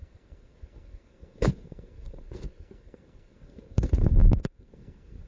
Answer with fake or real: fake